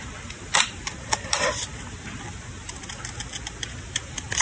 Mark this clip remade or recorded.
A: recorded